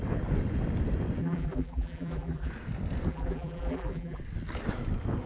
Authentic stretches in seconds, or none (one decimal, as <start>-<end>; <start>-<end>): 0.0-1.2; 2.5-3.1; 4.2-5.3